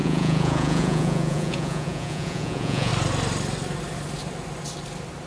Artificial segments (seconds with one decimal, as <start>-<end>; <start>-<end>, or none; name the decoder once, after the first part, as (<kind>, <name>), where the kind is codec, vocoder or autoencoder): 0.0-2.9 (vocoder, Vocos)